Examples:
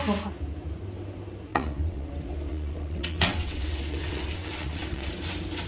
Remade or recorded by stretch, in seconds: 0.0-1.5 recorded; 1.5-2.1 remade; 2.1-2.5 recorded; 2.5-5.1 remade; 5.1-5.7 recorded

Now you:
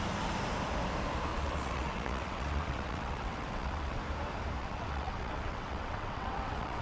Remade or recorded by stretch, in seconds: 0.0-1.3 recorded; 1.3-4.0 remade; 4.0-4.6 recorded; 4.6-6.8 remade

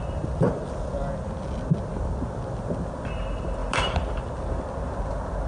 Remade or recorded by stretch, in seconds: 0.0-5.5 recorded

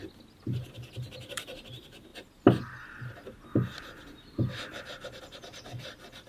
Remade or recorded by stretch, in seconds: 0.0-6.3 recorded